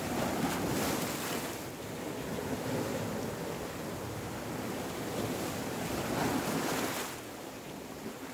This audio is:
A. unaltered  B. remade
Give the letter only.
A